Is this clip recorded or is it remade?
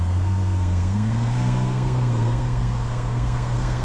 remade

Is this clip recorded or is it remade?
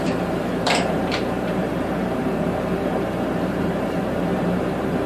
remade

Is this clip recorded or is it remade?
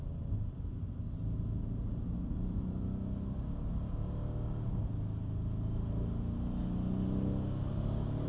recorded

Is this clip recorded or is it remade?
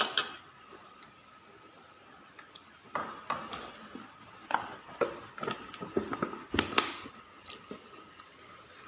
recorded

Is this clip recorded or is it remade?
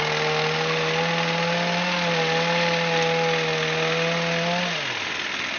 recorded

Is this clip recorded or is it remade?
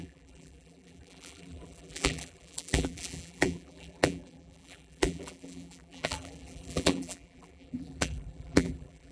remade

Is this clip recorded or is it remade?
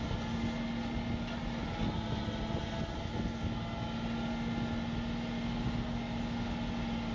recorded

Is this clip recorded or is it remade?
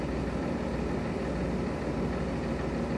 recorded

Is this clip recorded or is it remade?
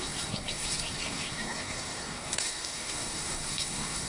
remade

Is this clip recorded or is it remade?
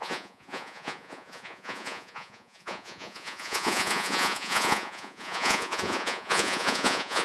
remade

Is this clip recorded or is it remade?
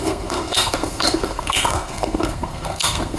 remade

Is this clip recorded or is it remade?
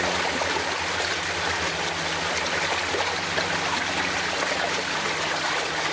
recorded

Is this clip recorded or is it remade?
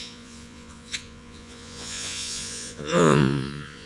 remade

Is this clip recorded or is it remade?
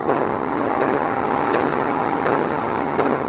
remade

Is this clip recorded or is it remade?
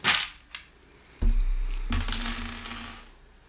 recorded